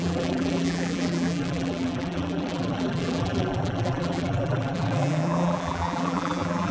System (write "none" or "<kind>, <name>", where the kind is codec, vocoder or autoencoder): vocoder, BigVGAN v2